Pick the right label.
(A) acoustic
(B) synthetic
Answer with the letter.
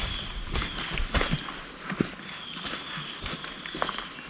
A